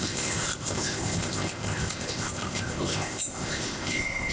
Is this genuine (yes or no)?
no